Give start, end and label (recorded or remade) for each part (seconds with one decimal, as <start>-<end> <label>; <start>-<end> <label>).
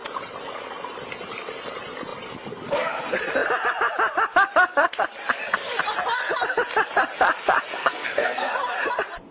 0.0-7.8 recorded; 7.8-8.5 remade; 8.5-9.3 recorded